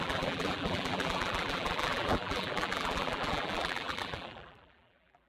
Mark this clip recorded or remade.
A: remade